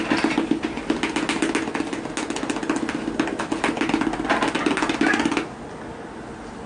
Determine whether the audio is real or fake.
real